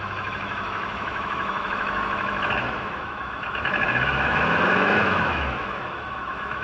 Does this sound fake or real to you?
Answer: fake